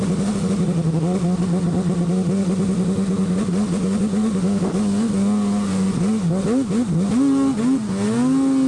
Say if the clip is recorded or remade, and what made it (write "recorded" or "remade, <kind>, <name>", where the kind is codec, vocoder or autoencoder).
recorded